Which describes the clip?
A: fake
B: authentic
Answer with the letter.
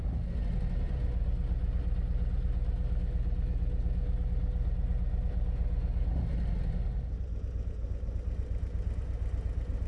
B